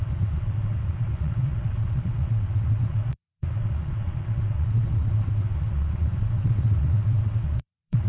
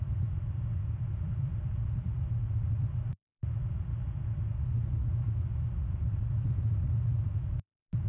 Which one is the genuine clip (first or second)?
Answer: second